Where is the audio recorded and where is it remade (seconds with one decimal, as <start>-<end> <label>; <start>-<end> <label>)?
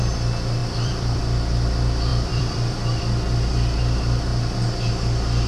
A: 0.0-0.6 recorded; 0.6-1.2 remade; 1.2-2.1 recorded; 2.1-3.0 remade; 3.0-5.5 recorded